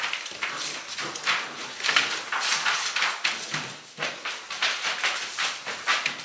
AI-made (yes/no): no